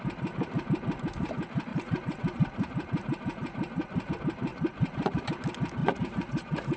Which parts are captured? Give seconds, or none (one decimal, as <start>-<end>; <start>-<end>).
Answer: 0.0-1.7; 4.1-4.5; 5.2-5.8